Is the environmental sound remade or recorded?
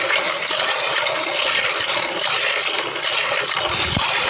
recorded